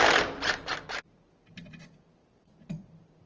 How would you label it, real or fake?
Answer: real